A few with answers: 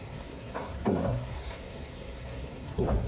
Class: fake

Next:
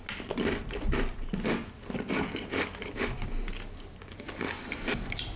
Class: real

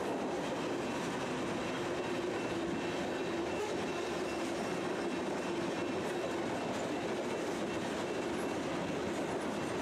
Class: real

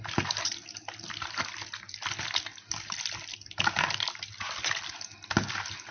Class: real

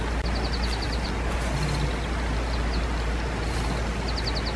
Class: real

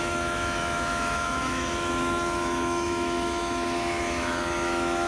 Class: fake